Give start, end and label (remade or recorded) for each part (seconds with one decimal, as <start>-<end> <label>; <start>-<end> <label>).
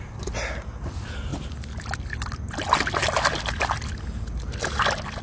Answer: 0.0-5.2 recorded